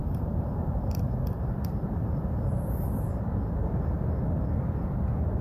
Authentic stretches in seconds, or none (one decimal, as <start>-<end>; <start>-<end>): 3.2-5.4